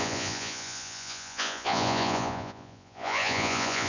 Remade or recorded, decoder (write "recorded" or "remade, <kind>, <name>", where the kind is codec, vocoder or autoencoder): remade, vocoder, Vocos